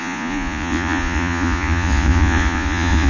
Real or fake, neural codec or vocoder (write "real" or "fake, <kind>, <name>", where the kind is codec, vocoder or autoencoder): fake, vocoder, Vocos